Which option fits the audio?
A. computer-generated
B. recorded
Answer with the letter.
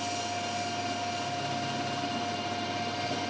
B